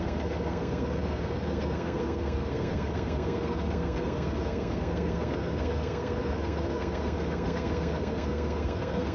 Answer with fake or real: fake